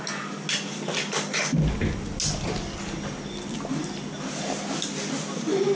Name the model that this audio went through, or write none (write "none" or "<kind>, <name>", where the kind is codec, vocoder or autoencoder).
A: none